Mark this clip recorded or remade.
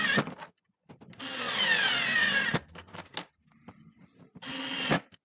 recorded